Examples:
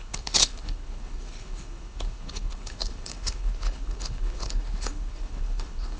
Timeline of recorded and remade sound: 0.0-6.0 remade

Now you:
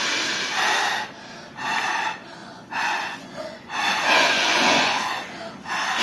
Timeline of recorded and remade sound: 0.0-2.4 recorded; 2.4-5.3 remade; 5.3-6.0 recorded